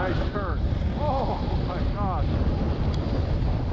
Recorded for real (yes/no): yes